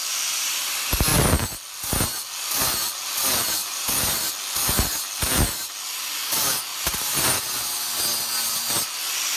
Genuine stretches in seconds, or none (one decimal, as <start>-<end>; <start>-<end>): 0.0-3.6; 4.3-9.4